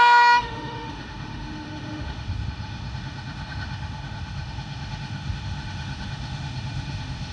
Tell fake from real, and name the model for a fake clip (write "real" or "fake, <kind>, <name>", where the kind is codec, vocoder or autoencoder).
fake, autoencoder, DAC-VAE